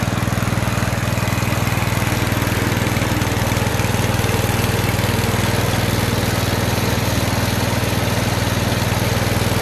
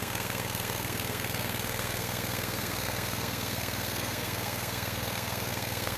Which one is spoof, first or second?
second